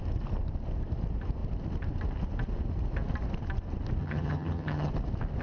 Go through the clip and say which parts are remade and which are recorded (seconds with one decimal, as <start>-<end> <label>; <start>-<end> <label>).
0.0-4.0 recorded; 4.0-4.9 remade; 4.9-5.4 recorded